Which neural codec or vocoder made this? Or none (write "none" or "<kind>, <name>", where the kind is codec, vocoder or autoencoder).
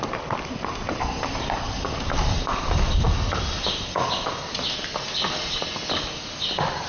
none